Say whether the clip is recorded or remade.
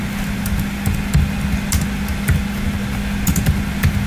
recorded